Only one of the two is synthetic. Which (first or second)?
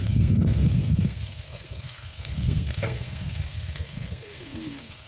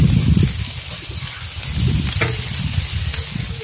first